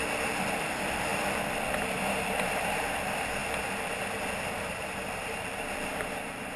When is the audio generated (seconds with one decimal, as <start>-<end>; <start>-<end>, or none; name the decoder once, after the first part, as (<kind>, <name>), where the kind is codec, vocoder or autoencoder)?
0.0-6.6 (vocoder, BigVGAN v2)